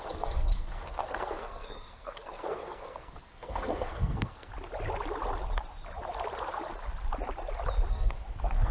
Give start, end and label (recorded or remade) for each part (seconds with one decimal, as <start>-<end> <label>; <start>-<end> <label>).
0.0-4.5 remade; 4.5-7.9 recorded; 7.9-8.7 remade